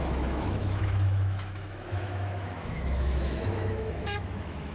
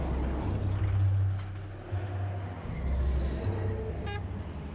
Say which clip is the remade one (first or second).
first